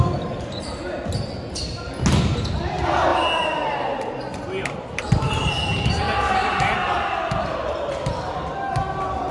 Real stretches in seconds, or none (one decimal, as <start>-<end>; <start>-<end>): 0.0-3.1; 5.5-6.4; 7.1-7.6; 8.6-9.3